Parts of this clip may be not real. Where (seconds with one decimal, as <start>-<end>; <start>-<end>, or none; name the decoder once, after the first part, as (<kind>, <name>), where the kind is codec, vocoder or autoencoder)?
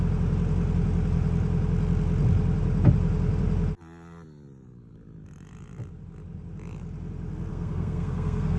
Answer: 7.5-8.6 (codec, SNAC)